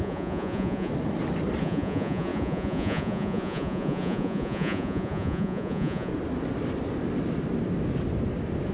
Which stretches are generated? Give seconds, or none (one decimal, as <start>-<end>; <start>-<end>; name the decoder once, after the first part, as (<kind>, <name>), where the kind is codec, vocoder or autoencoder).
0.0-0.9 (vocoder, Vocos); 1.6-6.1